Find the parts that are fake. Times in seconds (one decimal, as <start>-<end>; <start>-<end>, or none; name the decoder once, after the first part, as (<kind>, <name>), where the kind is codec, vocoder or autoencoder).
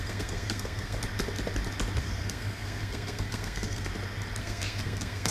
0.0-1.0 (codec, SNAC); 2.0-3.9; 4.4-5.3